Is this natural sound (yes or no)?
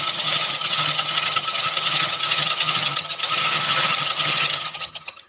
no